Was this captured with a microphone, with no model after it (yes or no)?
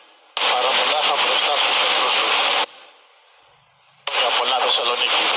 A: yes